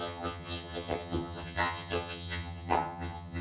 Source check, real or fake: fake